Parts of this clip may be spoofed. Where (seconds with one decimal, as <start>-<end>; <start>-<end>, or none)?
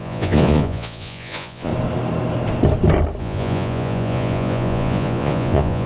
0.0-1.7; 3.2-5.9